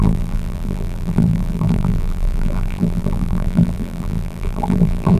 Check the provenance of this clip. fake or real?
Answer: fake